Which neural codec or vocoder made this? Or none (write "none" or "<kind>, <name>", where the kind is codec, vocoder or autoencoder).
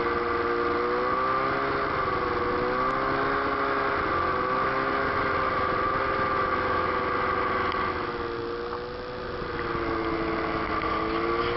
none